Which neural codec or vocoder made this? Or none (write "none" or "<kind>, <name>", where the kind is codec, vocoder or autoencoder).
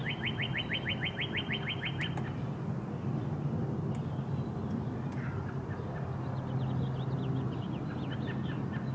none